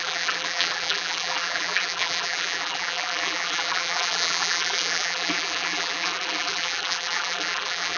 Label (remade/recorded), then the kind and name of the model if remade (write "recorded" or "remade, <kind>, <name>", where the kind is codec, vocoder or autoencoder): remade, vocoder, BigVGAN v2